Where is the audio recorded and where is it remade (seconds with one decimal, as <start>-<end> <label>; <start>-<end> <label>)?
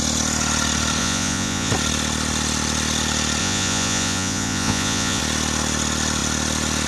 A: 0.0-1.0 recorded; 1.0-1.7 remade; 1.7-3.4 recorded; 3.4-5.2 remade; 5.2-6.9 recorded